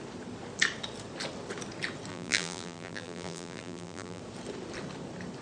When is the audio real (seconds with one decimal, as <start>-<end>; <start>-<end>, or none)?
0.0-2.1; 4.2-5.4